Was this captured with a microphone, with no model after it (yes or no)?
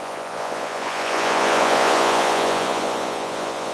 no